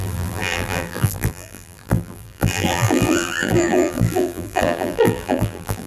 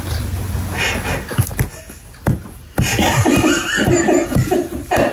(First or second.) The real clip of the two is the second